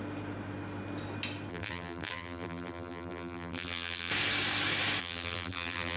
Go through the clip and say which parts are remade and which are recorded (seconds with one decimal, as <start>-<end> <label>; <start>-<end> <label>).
0.0-1.5 recorded; 1.5-4.1 remade; 4.1-5.0 recorded; 5.0-6.0 remade